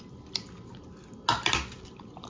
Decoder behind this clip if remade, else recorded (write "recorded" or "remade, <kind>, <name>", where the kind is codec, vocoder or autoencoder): recorded